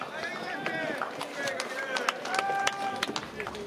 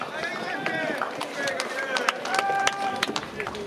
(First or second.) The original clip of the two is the first